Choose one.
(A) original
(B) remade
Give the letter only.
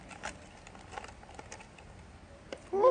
A